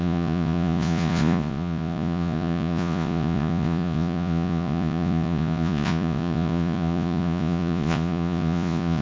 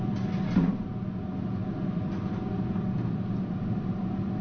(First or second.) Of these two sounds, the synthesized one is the first